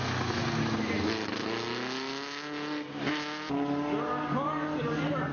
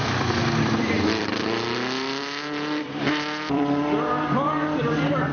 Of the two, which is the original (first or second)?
first